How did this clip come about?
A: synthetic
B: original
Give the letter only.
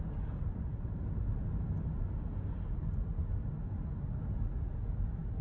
B